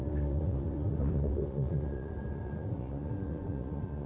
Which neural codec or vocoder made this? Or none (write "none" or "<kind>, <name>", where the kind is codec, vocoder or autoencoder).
vocoder, Vocos